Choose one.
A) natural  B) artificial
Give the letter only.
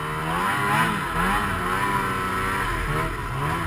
A